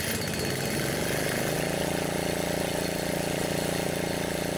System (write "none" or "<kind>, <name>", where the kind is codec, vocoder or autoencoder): none